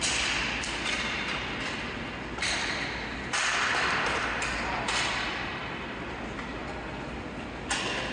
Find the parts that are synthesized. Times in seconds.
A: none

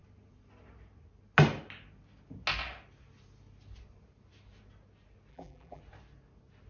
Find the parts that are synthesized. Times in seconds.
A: 5.3-5.8

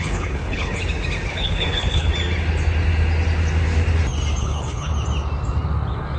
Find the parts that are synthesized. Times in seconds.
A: 0.0-0.8; 1.3-2.1; 4.4-4.9

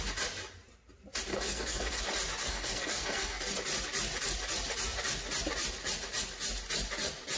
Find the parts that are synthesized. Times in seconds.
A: 1.3-2.0; 2.4-3.5

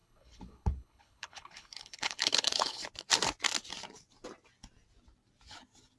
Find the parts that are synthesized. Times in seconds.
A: 0.0-2.8

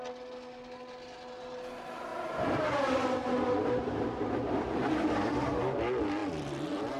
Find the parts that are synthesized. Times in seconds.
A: 2.1-5.1

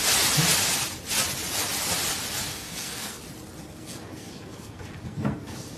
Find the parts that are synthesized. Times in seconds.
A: 2.5-3.2; 3.6-5.8